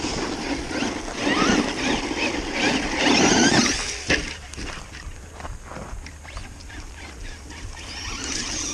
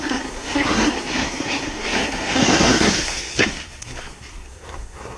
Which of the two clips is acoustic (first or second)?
first